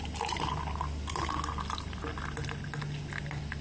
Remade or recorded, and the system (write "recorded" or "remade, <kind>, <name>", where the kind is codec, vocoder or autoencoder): recorded